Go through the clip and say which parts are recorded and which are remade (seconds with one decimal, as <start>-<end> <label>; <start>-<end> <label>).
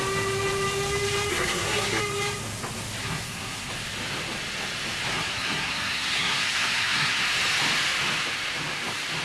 0.0-1.3 recorded; 1.3-2.0 remade; 2.0-3.0 recorded; 3.0-3.7 remade; 3.7-5.1 recorded; 5.1-7.2 remade; 7.2-9.2 recorded